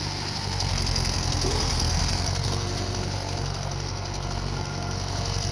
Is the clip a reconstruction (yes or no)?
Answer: yes